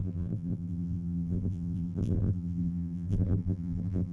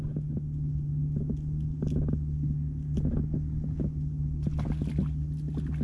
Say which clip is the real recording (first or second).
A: second